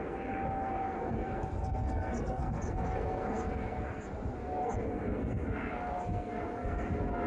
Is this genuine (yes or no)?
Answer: no